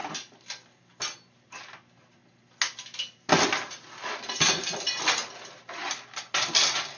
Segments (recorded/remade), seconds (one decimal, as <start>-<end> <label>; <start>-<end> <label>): 0.0-7.0 recorded